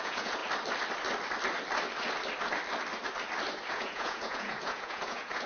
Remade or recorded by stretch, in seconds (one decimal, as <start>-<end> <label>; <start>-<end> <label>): 0.0-0.4 remade; 0.4-3.7 recorded; 3.7-5.5 remade